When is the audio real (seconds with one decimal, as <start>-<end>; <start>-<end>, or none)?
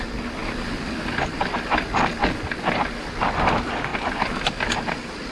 0.0-5.3